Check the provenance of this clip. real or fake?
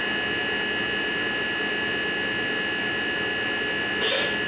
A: real